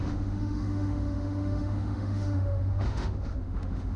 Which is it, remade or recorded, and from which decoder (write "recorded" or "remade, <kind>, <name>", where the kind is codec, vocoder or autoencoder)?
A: remade, autoencoder, DAC-VAE